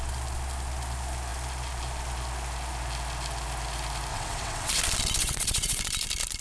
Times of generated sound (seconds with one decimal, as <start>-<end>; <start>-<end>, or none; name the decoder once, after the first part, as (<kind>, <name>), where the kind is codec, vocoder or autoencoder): 4.1-4.8 (vocoder, WaveNeXt); 5.2-5.8